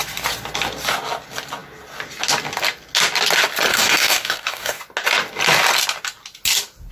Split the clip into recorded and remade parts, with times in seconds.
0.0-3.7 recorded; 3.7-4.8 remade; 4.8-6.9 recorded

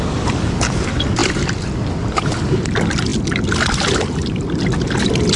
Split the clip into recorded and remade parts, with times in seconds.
0.0-5.4 recorded